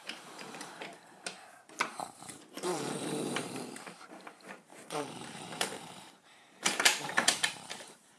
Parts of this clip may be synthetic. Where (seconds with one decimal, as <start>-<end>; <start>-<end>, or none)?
0.0-0.9; 2.0-8.2